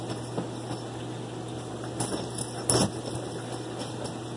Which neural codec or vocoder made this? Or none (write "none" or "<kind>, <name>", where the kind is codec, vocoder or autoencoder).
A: none